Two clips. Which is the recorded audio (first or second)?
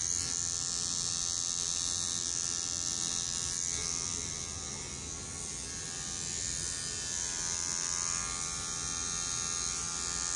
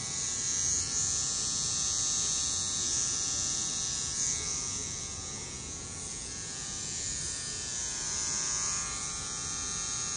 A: first